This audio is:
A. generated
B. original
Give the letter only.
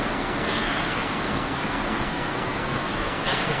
A